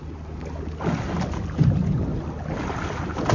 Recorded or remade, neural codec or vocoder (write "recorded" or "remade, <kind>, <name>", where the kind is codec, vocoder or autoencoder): recorded